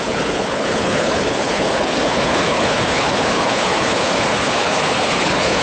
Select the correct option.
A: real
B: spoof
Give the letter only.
B